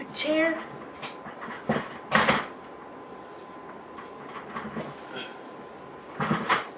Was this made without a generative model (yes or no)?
yes